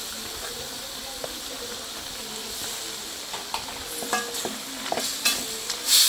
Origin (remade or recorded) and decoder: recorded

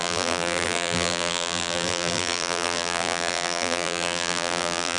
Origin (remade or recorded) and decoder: remade, vocoder, BigVGAN v2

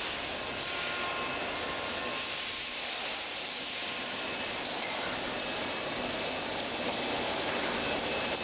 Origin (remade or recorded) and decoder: recorded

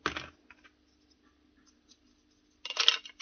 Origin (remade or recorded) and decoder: recorded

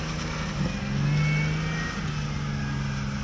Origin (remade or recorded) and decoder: recorded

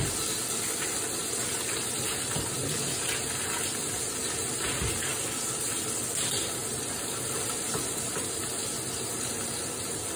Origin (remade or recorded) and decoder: recorded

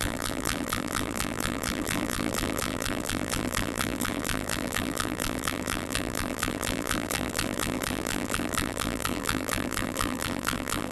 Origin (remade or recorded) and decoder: remade, vocoder, BigVGAN v2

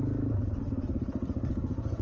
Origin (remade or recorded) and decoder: recorded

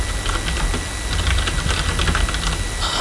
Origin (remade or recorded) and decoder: recorded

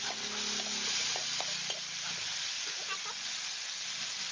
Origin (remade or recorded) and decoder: recorded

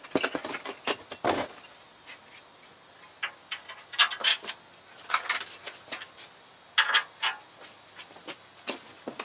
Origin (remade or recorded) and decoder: recorded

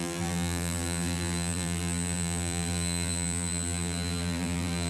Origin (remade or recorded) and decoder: remade, vocoder, BigVGAN v2